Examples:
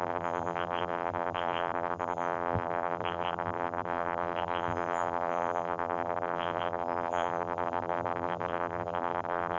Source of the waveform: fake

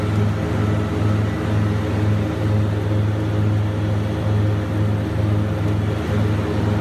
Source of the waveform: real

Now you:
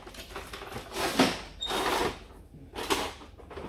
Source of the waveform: real